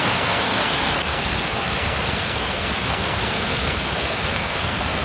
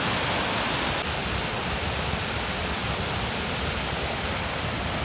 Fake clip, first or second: first